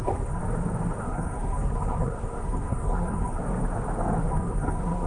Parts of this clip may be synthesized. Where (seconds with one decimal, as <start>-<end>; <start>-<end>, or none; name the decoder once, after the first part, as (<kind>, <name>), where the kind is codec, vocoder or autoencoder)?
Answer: 0.0-0.4 (codec, SNAC); 1.0-3.4; 4.3-5.1